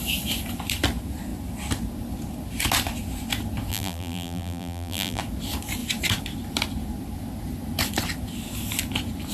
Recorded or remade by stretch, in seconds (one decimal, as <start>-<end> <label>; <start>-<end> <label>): 0.0-3.7 recorded; 3.7-5.2 remade; 5.2-9.3 recorded